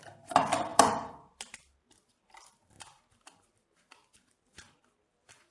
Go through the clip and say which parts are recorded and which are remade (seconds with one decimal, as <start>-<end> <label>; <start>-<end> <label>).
0.0-5.5 recorded